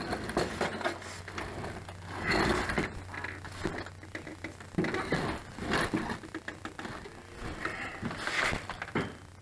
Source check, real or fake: real